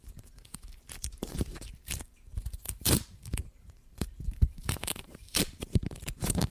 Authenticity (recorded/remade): remade